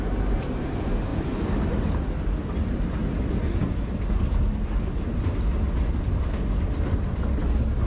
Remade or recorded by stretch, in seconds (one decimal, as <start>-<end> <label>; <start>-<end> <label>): 0.0-7.9 recorded